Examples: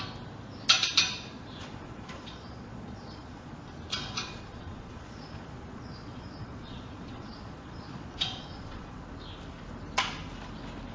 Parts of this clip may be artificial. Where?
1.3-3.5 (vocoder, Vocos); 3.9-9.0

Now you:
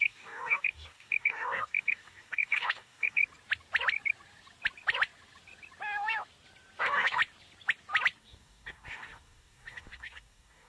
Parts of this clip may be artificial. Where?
0.0-3.2 (codec, DAC); 6.8-7.2; 8.2-10.7

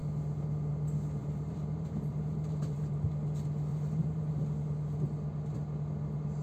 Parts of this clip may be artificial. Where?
1.2-3.1 (vocoder, BigVGAN v2); 3.7-4.3

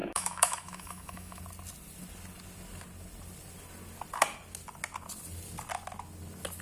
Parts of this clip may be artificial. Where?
0.0-1.4 (autoencoder, DAC-VAE)

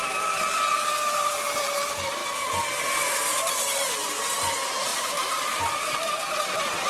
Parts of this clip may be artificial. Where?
4.9-5.6 (vocoder, BigVGAN v2)

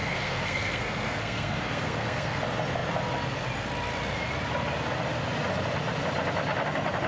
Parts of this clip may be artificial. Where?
0.0-2.4 (codec, SNAC)